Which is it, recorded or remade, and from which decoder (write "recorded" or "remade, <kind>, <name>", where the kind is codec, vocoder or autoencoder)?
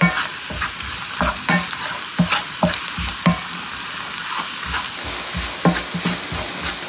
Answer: recorded